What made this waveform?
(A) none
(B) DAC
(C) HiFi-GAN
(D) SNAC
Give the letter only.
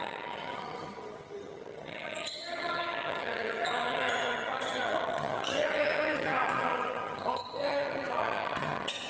C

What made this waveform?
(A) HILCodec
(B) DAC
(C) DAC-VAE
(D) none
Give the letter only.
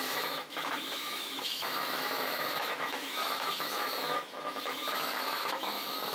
C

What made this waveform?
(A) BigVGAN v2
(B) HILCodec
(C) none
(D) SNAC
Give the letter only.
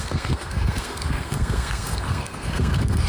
D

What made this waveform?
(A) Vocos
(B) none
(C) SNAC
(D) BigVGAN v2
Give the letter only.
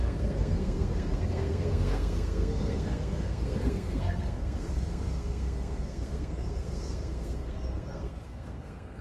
C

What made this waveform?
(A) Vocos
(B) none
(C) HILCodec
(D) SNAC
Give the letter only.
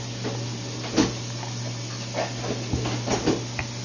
B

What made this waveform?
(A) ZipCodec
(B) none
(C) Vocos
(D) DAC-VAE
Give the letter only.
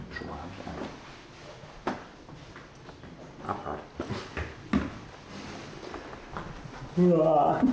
B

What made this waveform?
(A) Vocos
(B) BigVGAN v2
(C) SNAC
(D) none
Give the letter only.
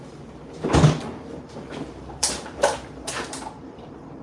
B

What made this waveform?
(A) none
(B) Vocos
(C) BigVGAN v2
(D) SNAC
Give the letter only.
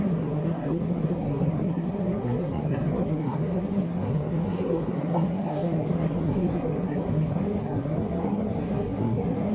D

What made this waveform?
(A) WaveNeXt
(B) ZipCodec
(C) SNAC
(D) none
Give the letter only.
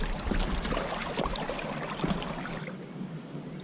D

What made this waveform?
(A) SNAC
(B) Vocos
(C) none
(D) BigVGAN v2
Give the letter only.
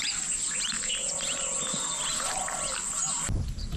C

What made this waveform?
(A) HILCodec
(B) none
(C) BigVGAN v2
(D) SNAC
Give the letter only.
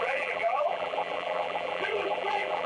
C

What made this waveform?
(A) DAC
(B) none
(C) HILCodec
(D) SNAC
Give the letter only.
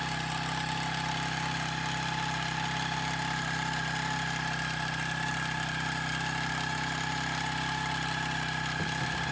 B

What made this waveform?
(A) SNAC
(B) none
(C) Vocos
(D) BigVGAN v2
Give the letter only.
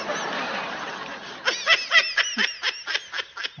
B